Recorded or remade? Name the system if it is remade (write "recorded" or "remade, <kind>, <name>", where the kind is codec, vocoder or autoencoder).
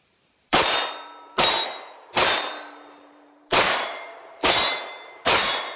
remade, vocoder, BigVGAN v2